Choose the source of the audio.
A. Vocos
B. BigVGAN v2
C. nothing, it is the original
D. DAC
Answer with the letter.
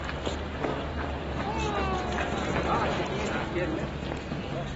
C